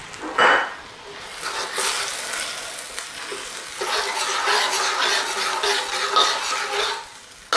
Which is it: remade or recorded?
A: recorded